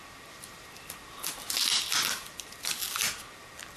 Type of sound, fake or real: real